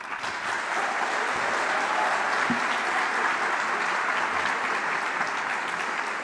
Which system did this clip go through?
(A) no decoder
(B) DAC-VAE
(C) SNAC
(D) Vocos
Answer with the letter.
A